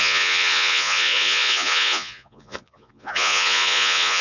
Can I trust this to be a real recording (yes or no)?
no